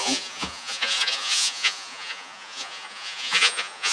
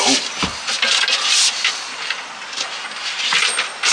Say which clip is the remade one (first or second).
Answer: first